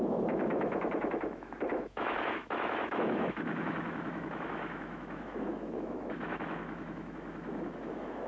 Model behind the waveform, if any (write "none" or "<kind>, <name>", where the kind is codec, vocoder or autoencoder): autoencoder, DAC-VAE